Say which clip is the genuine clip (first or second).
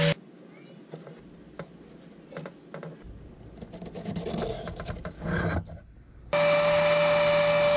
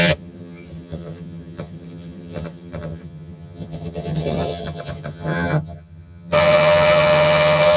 first